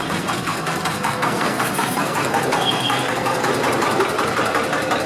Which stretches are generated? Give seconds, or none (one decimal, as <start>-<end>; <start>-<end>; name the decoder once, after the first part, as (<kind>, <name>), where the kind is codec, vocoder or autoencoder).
0.0-3.5 (codec, SNAC)